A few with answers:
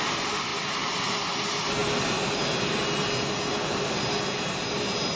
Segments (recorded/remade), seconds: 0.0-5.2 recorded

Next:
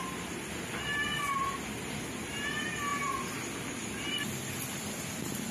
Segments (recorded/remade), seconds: 0.0-5.5 recorded

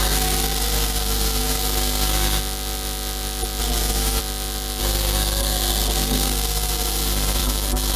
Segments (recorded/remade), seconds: 0.0-2.4 remade; 2.4-3.6 recorded; 3.6-4.2 remade; 4.2-4.8 recorded; 4.8-8.0 remade

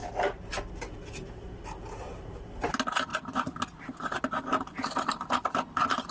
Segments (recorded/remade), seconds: 0.0-6.1 recorded

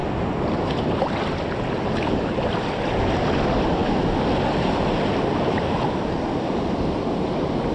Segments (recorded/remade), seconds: 0.0-7.7 recorded

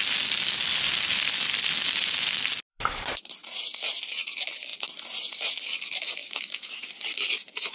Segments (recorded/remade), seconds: 0.0-2.7 recorded; 2.7-3.3 remade; 3.3-6.2 recorded; 6.2-6.9 remade; 6.9-7.7 recorded

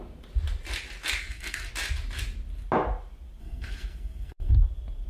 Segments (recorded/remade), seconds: 0.0-1.2 recorded; 1.2-1.7 remade; 1.7-3.4 recorded; 3.4-4.5 remade; 4.5-5.1 recorded

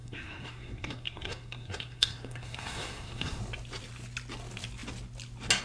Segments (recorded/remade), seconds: 0.0-3.4 remade; 3.4-5.6 recorded